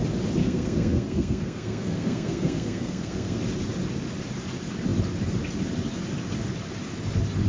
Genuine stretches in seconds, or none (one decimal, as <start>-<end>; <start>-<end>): 0.0-0.4; 3.4-7.5